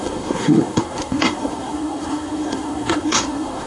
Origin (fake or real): fake